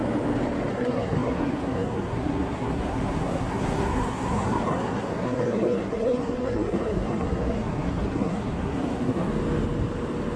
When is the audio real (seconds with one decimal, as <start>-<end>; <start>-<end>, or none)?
0.0-0.7; 9.3-10.4